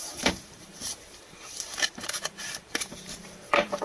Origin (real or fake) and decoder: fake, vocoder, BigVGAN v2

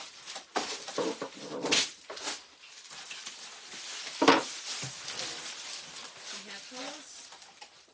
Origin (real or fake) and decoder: real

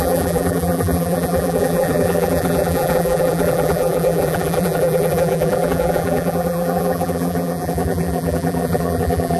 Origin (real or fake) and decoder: fake, vocoder, BigVGAN v2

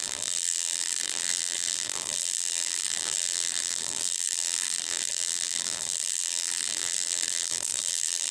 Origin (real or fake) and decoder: fake, vocoder, BigVGAN v2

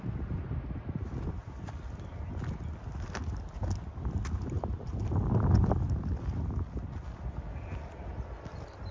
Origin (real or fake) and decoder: real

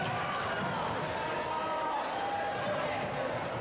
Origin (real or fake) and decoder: real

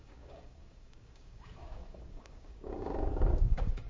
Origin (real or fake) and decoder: fake, codec, DAC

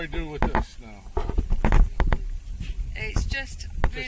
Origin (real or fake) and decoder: real